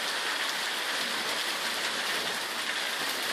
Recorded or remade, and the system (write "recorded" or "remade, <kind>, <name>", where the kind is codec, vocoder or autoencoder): recorded